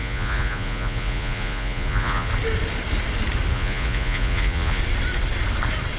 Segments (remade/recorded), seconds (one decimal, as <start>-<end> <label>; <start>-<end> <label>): 0.0-2.3 remade; 2.3-3.5 recorded; 3.5-4.8 remade; 4.8-6.0 recorded